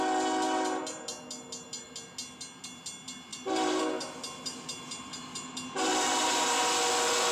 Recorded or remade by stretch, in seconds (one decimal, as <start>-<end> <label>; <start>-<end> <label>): 0.0-3.3 recorded; 3.3-3.8 remade; 3.8-5.9 recorded; 5.9-6.6 remade; 6.6-7.3 recorded